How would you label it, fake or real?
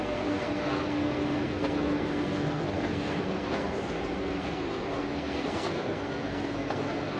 fake